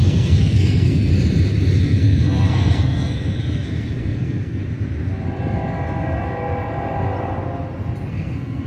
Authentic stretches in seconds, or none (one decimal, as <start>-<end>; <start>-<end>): 1.1-1.8; 4.6-8.1